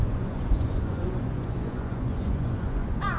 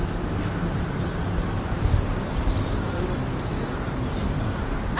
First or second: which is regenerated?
first